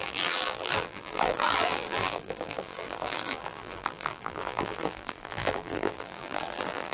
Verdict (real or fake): fake